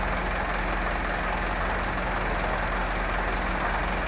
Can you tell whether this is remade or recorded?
recorded